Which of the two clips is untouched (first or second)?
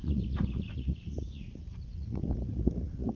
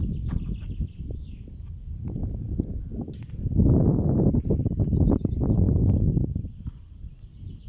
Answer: second